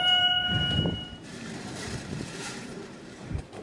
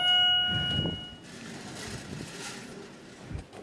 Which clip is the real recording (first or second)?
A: second